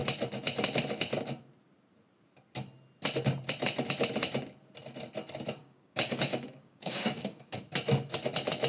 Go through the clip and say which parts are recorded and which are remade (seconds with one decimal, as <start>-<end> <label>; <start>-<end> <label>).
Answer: 0.0-5.6 recorded; 5.6-7.6 remade; 7.6-8.7 recorded

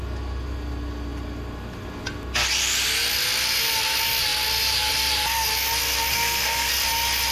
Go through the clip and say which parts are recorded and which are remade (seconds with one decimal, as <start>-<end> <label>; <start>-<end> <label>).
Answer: 0.0-6.1 recorded; 6.1-6.7 remade; 6.7-7.3 recorded

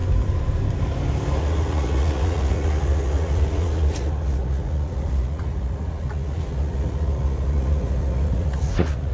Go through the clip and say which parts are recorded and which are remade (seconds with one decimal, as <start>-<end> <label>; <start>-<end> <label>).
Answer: 0.0-1.4 recorded; 1.4-9.1 remade